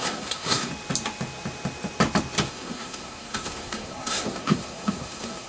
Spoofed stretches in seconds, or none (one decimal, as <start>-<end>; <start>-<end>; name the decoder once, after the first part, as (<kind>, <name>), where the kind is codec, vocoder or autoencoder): 0.0-0.7 (codec, SNAC); 2.5-5.5